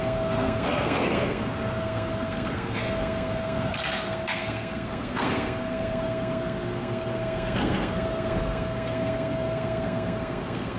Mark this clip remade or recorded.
remade